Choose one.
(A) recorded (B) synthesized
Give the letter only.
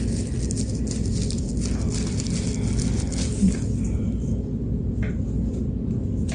A